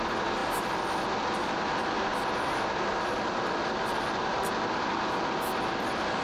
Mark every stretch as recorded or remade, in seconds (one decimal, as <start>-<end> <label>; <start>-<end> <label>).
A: 0.0-6.2 recorded